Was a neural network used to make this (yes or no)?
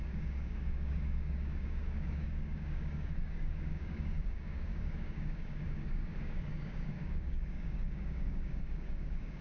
yes